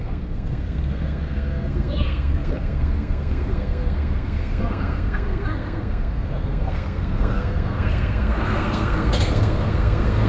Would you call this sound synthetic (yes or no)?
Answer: yes